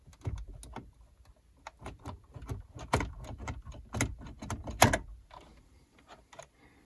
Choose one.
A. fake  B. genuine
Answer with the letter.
B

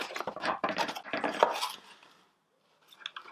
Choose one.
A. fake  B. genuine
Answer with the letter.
B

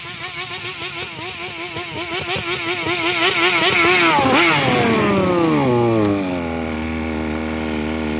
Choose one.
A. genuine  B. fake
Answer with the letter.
A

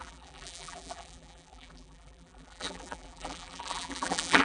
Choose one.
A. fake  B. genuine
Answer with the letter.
A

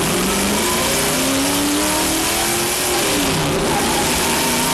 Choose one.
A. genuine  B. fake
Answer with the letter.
A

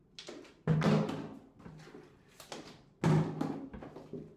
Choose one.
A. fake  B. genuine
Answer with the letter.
B